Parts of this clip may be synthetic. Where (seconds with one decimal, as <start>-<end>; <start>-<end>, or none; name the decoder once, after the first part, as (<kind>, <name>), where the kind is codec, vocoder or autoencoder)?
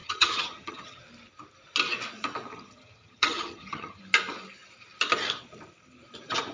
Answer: 0.0-1.0 (vocoder, HiFi-GAN); 2.5-4.0